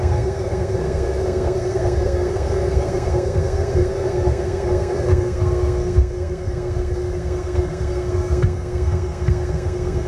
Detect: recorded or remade remade